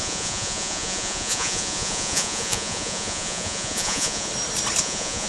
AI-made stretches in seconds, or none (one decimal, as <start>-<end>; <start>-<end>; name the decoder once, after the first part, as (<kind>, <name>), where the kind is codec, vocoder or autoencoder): 0.0-4.3 (vocoder, Vocos); 4.8-5.3